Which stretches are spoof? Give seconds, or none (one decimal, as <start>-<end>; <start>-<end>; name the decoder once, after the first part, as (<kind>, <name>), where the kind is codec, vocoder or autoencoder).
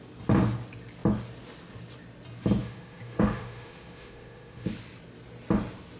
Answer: 2.6-4.7 (autoencoder, DAC-VAE)